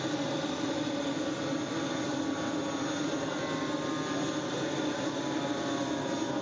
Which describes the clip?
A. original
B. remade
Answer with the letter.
A